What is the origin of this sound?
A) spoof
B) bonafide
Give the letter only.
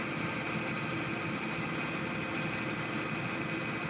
B